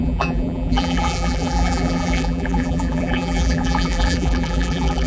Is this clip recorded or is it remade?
remade